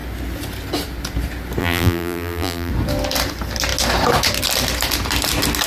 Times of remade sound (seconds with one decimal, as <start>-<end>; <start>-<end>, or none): 1.6-2.7